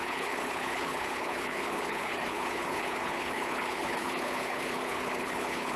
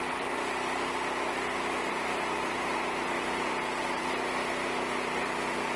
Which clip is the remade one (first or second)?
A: first